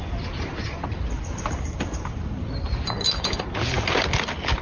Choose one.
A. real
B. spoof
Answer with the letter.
A